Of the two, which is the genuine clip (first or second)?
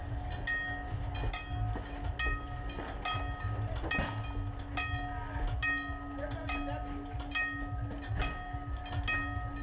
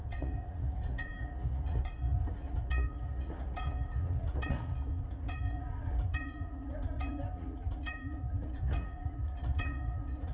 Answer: first